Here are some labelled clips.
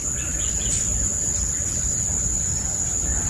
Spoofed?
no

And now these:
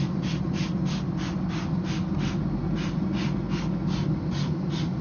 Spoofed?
no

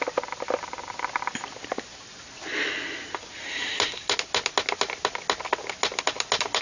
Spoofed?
no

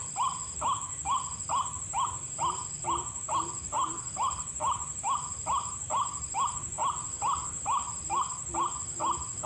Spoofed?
no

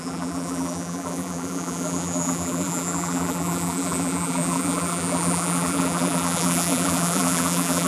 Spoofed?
yes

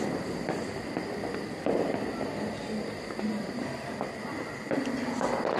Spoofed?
no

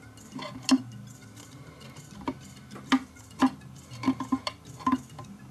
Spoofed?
no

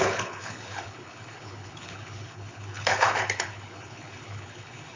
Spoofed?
yes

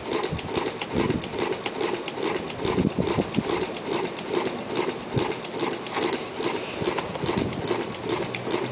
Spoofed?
no